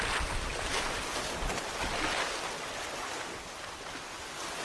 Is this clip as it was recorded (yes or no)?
yes